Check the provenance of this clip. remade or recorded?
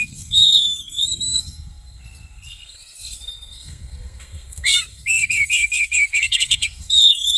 remade